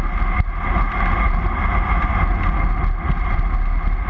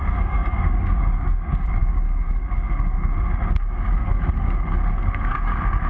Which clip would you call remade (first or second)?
second